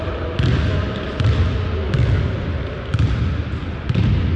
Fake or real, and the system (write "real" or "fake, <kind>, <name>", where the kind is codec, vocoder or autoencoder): real